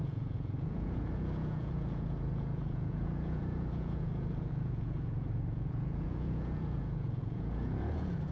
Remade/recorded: remade